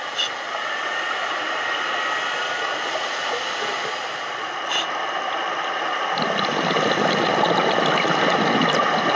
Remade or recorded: recorded